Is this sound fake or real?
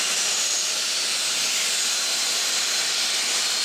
real